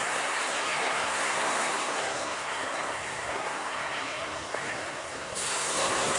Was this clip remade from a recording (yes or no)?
yes